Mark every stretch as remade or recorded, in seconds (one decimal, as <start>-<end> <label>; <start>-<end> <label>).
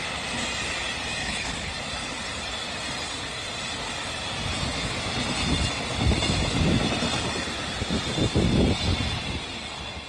0.0-1.2 recorded; 1.2-1.7 remade; 1.7-10.1 recorded